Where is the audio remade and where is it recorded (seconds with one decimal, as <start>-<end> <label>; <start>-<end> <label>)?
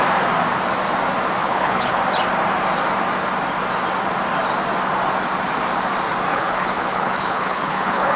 0.0-1.4 recorded; 1.4-2.0 remade; 2.0-6.3 recorded; 6.3-8.2 remade